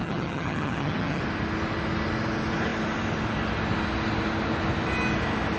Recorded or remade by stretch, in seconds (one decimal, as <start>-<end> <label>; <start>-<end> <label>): 0.0-1.2 remade; 1.2-5.6 recorded